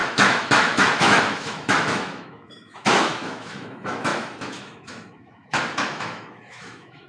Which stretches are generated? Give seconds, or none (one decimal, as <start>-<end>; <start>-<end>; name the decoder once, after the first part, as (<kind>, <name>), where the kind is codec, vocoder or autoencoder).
0.0-7.1 (autoencoder, DAC-VAE)